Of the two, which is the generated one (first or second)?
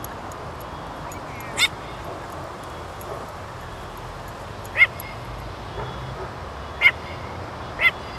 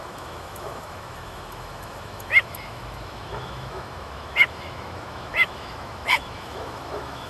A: second